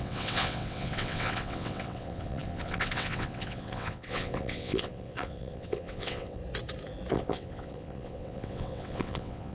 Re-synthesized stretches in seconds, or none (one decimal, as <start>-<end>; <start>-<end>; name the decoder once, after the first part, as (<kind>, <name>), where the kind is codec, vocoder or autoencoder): 0.0-6.4 (vocoder, WaveNeXt); 7.1-9.5